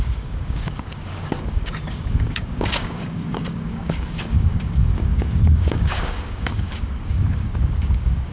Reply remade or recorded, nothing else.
remade